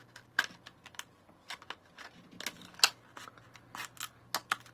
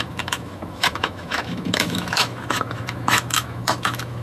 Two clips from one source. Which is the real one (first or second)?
first